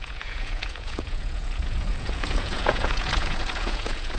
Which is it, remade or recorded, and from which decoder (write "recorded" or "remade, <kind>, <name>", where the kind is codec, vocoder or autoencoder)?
remade, vocoder, Vocos